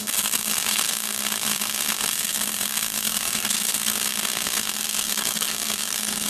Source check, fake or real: fake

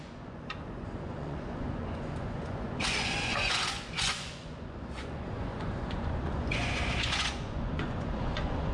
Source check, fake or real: fake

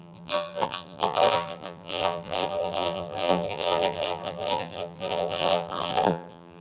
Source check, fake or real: fake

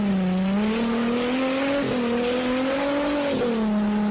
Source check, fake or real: real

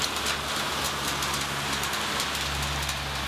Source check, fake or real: real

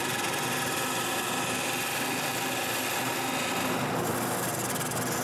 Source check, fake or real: real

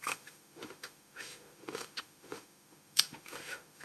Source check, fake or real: fake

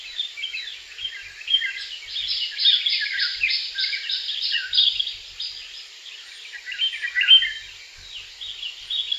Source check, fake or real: real